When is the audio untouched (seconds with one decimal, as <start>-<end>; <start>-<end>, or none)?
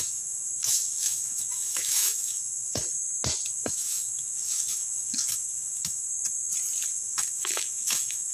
2.8-3.5; 6.1-6.9